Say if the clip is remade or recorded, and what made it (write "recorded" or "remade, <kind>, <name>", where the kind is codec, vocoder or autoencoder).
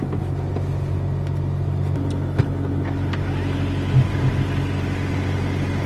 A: recorded